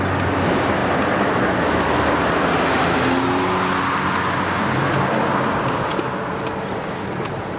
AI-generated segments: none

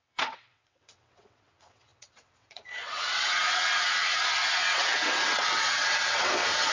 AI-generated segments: 0.0-6.7

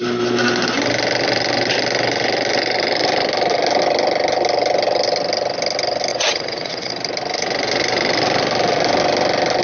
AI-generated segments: 6.1-6.9

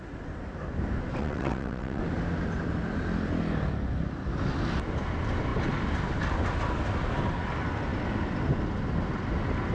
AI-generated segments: 1.2-2.0

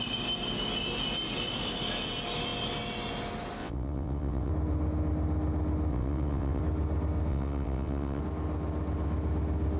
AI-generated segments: 3.6-4.5; 5.9-6.6; 7.3-8.2

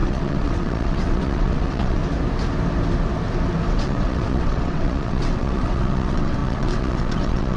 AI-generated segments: 0.0-2.0; 3.7-7.6

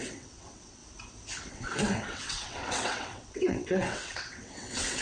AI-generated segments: 0.0-0.8; 1.5-5.0